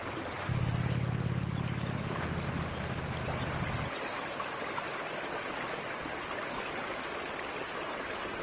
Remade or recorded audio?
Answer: recorded